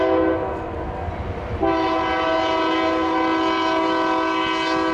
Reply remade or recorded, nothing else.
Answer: recorded